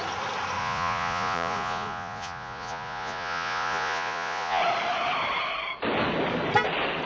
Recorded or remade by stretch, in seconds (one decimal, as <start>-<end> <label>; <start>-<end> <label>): 0.0-0.6 recorded; 0.6-4.6 remade; 4.6-7.1 recorded